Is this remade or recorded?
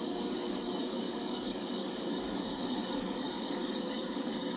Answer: remade